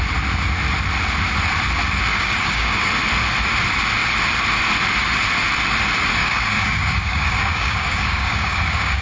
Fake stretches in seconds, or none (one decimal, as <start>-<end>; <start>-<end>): 2.1-2.9; 6.2-9.0